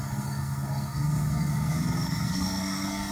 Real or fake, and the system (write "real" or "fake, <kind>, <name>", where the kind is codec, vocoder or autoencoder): fake, codec, SNAC